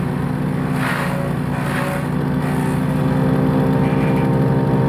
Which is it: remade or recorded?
recorded